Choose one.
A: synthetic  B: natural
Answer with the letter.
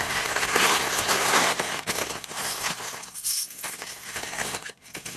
A